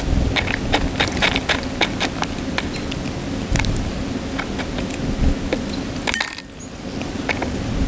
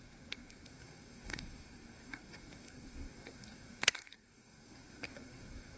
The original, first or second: first